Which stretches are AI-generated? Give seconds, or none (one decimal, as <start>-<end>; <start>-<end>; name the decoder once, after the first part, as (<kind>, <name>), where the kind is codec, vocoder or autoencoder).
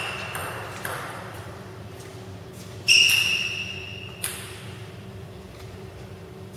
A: 0.0-2.1 (vocoder, BigVGAN v2); 4.3-6.6